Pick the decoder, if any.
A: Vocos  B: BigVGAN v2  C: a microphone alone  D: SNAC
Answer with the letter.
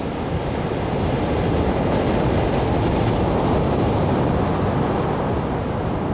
C